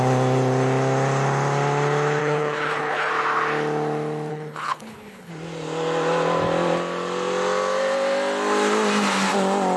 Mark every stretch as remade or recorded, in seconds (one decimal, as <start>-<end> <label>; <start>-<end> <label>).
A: 0.0-2.2 recorded; 2.2-3.1 remade; 3.1-4.3 recorded; 4.3-5.3 remade; 5.3-9.8 recorded

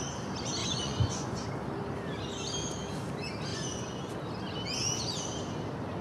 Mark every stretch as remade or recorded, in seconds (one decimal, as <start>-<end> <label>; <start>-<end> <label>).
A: 0.0-0.6 recorded; 0.6-1.4 remade; 1.4-3.5 recorded; 3.5-4.1 remade; 4.1-6.0 recorded

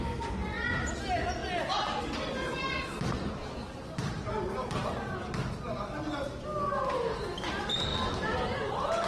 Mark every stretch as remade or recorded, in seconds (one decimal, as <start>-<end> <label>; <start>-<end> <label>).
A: 0.0-3.4 recorded; 3.4-4.3 remade; 4.3-9.1 recorded

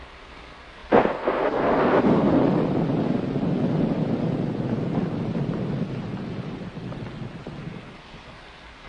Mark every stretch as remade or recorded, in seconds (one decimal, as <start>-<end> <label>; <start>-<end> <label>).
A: 0.0-2.4 remade; 2.4-7.6 recorded; 7.6-8.9 remade

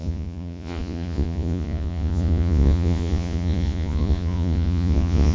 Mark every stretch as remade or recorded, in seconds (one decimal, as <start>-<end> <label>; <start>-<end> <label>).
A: 0.0-5.3 remade

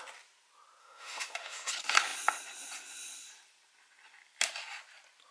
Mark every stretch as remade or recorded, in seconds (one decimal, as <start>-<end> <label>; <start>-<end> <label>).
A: 0.0-0.8 recorded; 0.8-1.7 remade; 1.7-5.3 recorded

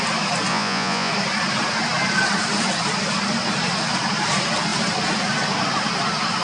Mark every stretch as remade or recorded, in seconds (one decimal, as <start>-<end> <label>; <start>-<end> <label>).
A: 0.0-0.5 recorded; 0.5-1.1 remade; 1.1-6.4 recorded